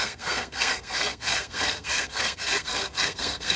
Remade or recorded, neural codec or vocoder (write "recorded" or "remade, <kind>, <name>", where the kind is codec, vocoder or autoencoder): remade, codec, SNAC